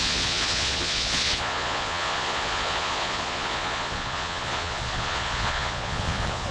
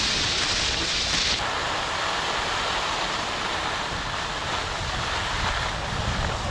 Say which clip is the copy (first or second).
first